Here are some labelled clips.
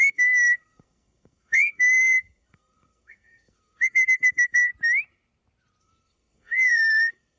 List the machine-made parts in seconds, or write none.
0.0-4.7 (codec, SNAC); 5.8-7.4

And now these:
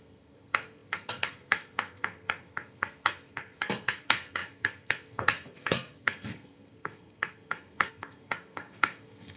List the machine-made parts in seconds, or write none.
0.0-9.4 (codec, SNAC)